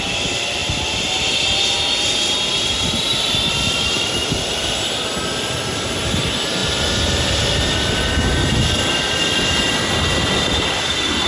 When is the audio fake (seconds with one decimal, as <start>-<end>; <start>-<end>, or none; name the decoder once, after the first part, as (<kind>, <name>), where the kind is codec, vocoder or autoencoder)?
0.6-1.1 (vocoder, BigVGAN v2); 3.1-4.1; 6.6-8.0